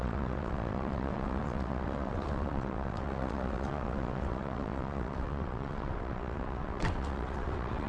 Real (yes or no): no